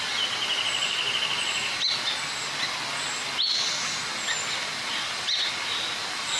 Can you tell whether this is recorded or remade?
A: recorded